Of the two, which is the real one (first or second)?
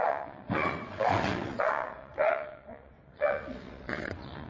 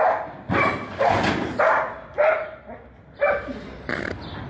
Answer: second